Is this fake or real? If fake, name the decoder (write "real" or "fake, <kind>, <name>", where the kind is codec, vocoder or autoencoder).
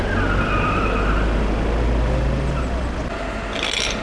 real